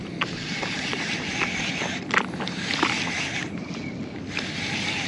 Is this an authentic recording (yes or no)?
yes